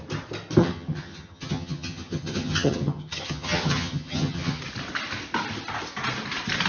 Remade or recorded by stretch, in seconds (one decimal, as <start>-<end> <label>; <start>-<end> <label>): 0.0-0.6 recorded; 0.6-4.6 remade; 4.6-6.7 recorded